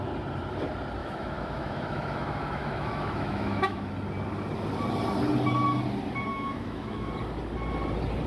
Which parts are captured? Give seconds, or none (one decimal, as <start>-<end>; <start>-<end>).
0.0-1.0; 3.9-6.3; 7.1-8.3